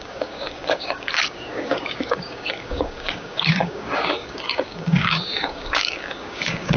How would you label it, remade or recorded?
remade